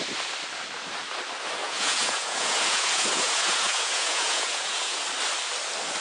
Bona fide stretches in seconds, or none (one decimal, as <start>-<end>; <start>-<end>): 0.0-1.6; 5.0-6.0